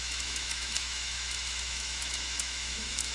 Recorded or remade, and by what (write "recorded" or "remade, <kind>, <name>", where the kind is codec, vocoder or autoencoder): remade, autoencoder, DAC-VAE